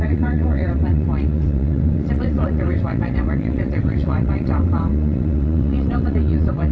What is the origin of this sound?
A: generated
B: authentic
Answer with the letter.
A